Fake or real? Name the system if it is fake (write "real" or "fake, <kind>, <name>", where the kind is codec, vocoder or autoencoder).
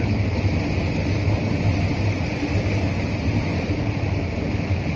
real